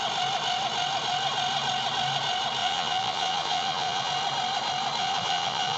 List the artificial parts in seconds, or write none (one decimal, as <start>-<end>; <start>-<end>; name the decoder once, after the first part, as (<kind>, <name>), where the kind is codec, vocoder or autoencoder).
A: 2.6-4.1 (vocoder, Vocos); 5.0-5.8